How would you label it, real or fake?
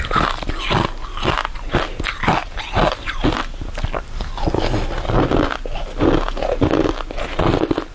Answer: real